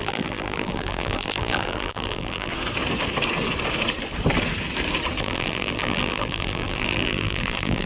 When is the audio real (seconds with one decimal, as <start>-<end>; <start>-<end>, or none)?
2.5-5.2